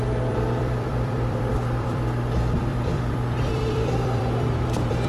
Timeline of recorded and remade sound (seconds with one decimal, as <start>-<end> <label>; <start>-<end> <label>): 0.0-5.1 remade